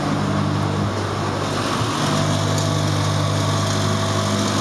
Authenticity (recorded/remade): recorded